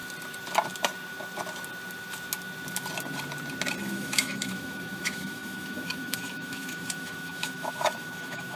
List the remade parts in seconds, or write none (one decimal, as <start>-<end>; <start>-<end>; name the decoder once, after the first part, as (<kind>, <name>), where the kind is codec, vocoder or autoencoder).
3.8-8.6 (autoencoder, DAC-VAE)